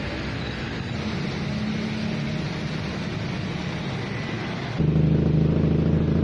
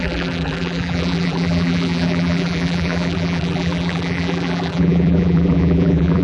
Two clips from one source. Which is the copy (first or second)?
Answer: second